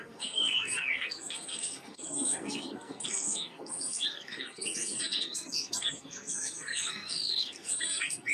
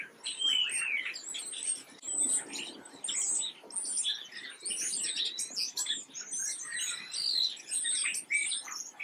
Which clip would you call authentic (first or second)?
second